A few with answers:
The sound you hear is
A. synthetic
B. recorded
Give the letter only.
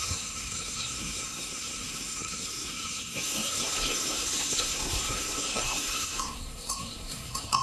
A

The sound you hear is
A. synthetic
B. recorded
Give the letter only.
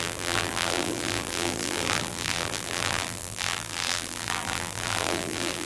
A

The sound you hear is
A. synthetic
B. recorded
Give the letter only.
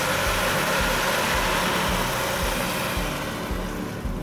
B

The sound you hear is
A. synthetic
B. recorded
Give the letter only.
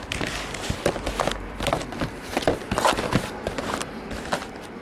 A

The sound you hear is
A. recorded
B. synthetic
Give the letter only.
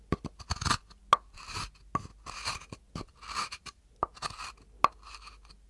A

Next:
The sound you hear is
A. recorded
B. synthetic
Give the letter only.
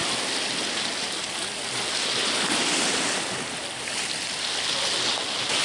A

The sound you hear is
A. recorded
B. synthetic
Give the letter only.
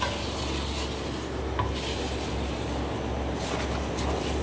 A